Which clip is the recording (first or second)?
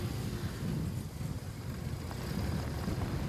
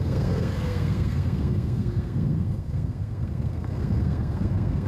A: first